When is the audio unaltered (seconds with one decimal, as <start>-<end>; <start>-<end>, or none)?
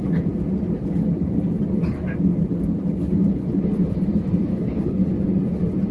0.0-4.5; 5.1-5.9